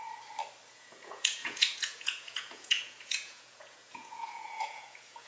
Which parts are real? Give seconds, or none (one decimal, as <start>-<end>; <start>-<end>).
0.0-0.7

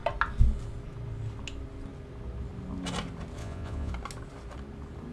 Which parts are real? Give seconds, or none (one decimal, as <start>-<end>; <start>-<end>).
0.0-3.4; 3.9-5.1

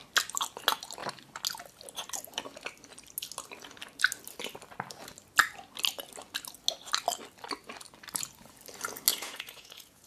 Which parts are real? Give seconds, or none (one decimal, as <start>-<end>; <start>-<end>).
0.0-9.1

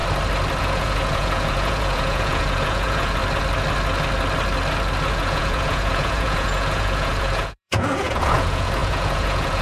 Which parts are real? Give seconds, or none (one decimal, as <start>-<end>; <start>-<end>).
0.0-0.6; 3.2-5.1

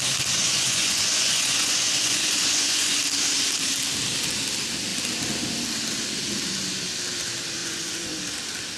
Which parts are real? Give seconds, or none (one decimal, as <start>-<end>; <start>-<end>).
0.0-0.4; 3.0-7.6; 8.1-8.8

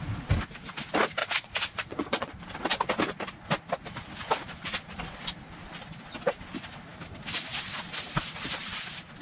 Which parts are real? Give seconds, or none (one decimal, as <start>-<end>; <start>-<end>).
0.0-1.2; 2.3-9.2